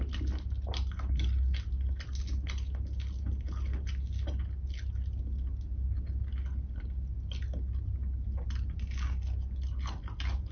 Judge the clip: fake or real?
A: real